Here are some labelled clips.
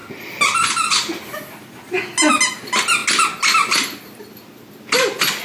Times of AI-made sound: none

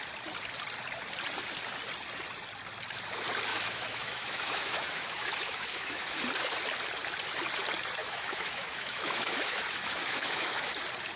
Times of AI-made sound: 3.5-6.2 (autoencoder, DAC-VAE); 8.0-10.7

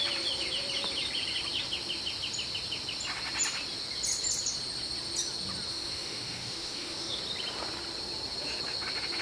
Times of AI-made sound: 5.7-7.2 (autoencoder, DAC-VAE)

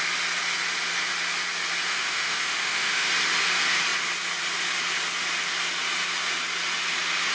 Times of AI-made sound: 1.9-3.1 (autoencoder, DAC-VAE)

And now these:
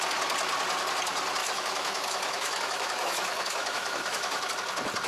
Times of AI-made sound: 1.4-4.5 (autoencoder, DAC-VAE)